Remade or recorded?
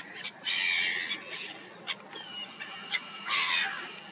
recorded